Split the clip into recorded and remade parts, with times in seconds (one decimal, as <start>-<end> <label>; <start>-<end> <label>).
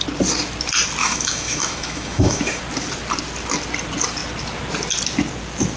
0.0-1.0 recorded; 1.0-2.6 remade; 2.6-5.8 recorded